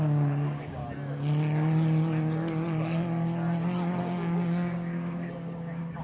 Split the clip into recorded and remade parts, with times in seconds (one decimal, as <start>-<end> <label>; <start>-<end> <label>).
0.0-0.8 remade; 0.8-4.0 recorded; 4.0-6.0 remade